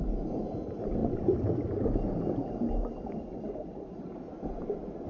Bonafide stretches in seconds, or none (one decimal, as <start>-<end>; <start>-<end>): 0.0-5.1